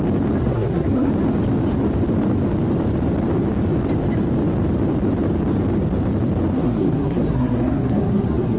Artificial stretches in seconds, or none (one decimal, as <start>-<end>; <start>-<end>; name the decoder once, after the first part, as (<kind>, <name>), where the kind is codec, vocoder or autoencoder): 0.4-1.1 (codec, SNAC); 6.5-8.6